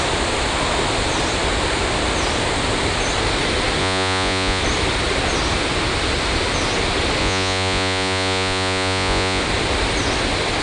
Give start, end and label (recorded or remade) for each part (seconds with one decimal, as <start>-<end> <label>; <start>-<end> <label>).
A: 0.0-3.8 recorded; 3.8-4.6 remade; 4.6-7.2 recorded; 7.2-9.4 remade; 9.4-10.6 recorded